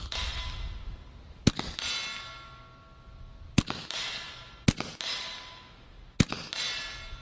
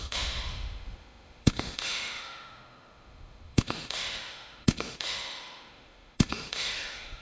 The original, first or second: first